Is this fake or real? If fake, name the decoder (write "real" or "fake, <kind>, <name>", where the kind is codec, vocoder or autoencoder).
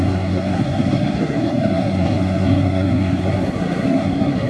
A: fake, codec, SNAC